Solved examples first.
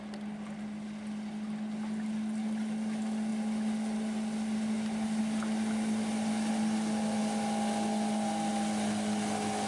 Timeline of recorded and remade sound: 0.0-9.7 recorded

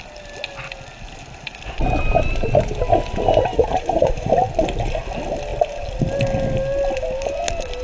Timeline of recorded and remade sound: 0.0-3.5 recorded; 3.5-4.3 remade; 4.3-7.8 recorded